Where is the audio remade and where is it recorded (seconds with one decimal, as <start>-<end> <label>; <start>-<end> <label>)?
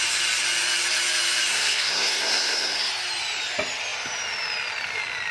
0.0-1.5 recorded; 1.5-2.9 remade; 2.9-5.3 recorded